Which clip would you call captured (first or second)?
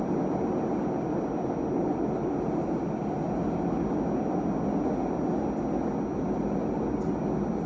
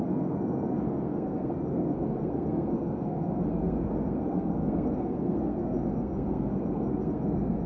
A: first